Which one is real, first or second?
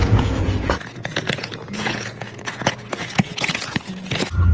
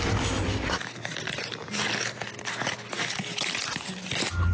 second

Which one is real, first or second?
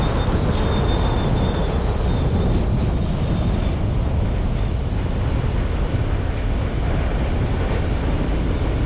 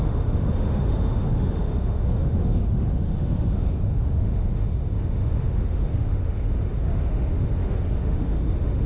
first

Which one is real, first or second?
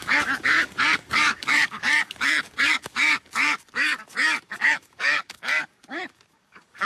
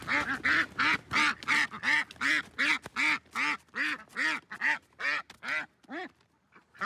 second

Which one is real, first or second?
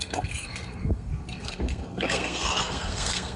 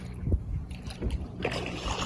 second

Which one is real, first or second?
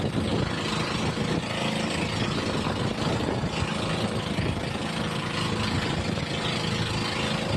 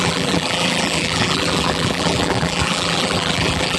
first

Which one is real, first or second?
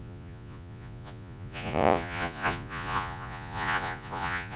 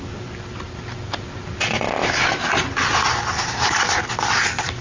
second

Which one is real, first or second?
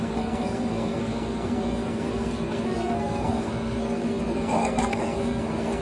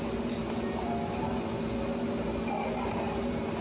second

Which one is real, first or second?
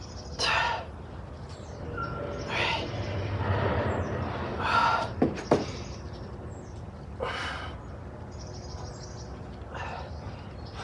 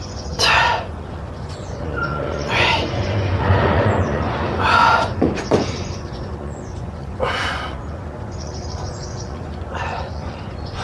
first